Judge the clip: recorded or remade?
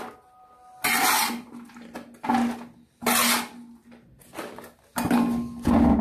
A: recorded